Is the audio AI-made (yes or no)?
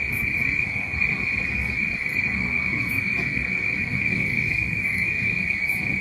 yes